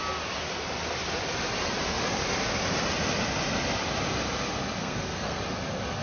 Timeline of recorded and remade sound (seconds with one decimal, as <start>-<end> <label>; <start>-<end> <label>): 0.0-4.8 recorded; 4.8-5.4 remade; 5.4-6.0 recorded

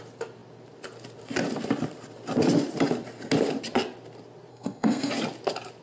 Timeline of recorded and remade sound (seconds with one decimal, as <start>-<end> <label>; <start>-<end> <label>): 0.0-4.5 recorded; 4.5-5.1 remade; 5.1-5.8 recorded

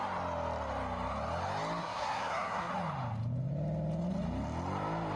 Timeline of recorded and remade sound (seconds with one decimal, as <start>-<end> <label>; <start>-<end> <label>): 0.0-1.8 recorded; 1.8-2.7 remade; 2.7-5.2 recorded

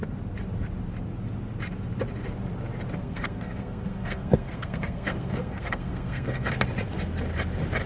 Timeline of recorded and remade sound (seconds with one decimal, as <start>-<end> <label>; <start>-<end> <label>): 0.0-3.0 recorded; 3.0-6.5 remade; 6.5-7.9 recorded

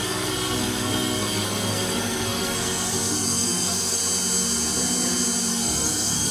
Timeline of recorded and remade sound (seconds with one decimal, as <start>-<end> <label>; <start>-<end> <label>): 0.0-4.0 remade; 4.0-5.5 recorded; 5.5-6.3 remade

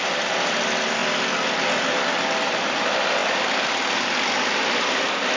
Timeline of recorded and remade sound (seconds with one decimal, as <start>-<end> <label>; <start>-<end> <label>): 0.0-5.4 recorded